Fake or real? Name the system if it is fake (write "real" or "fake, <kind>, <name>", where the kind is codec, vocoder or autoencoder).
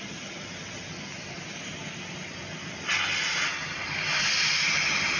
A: real